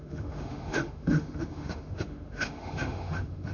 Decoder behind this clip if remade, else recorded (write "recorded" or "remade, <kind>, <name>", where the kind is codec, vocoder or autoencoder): remade, autoencoder, DAC-VAE